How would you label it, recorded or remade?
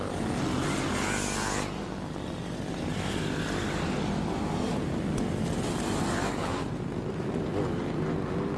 recorded